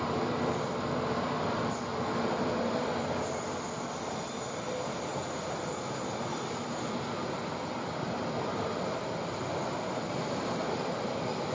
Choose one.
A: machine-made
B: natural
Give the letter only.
B